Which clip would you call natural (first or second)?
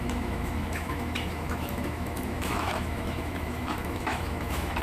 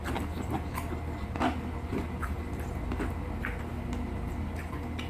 second